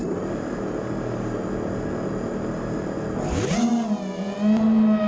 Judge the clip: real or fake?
real